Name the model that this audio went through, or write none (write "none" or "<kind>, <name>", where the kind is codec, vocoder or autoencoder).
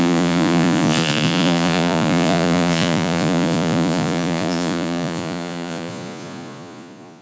vocoder, Vocos